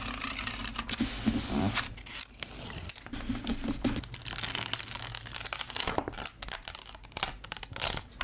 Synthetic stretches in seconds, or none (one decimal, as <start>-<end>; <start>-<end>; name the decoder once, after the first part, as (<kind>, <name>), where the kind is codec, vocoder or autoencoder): none